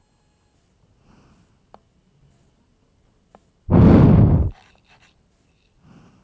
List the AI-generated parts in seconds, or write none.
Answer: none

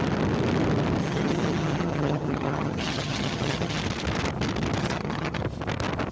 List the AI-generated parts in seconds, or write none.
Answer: 1.0-3.8 (vocoder, HiFi-GAN); 4.8-5.4

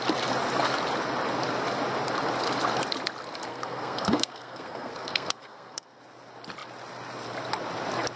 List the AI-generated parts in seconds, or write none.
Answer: 3.5-6.0 (codec, SNAC)